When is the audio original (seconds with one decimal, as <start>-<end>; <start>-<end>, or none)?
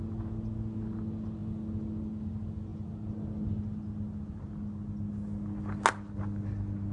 0.0-6.9